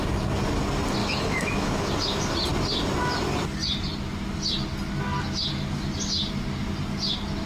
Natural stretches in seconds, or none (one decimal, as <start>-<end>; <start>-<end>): 0.0-1.0; 1.9-7.5